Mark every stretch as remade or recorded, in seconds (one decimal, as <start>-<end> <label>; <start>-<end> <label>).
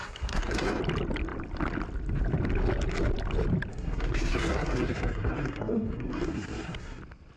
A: 0.0-0.8 remade; 0.8-3.7 recorded; 3.7-7.0 remade; 7.0-7.4 recorded